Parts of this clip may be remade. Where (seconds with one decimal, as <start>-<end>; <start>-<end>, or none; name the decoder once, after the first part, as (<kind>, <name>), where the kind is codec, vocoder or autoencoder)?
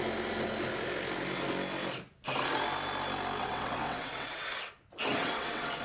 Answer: 3.4-4.6 (vocoder, WaveNeXt); 5.2-5.8